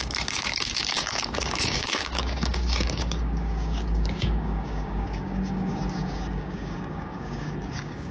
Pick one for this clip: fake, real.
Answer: fake